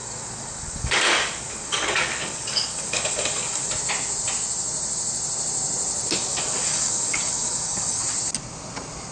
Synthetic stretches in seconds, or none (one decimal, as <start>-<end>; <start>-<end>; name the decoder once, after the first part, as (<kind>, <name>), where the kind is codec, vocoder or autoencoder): 0.0-3.7 (codec, DAC); 6.3-8.0